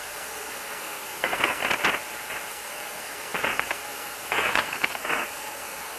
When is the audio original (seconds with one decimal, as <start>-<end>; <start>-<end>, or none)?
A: 1.6-2.5